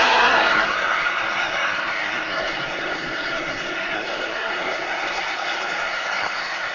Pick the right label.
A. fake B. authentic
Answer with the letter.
A